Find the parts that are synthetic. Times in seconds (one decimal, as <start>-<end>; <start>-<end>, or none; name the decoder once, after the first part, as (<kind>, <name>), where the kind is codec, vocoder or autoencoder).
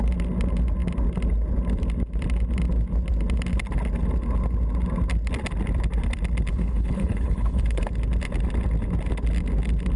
6.5-7.9 (codec, HILCodec)